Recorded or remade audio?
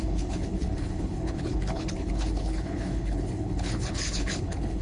remade